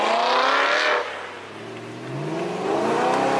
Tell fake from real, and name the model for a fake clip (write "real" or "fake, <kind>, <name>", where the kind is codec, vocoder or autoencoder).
real